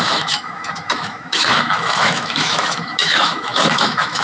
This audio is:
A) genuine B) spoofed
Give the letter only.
B